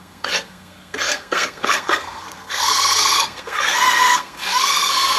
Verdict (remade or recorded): remade